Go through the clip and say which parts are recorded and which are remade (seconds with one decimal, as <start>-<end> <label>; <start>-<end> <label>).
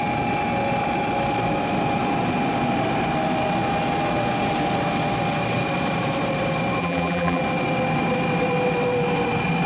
0.0-6.8 recorded; 6.8-7.4 remade; 7.4-9.7 recorded